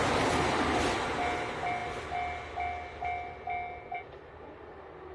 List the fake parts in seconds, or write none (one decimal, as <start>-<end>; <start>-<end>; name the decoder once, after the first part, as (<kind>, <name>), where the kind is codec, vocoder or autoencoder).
none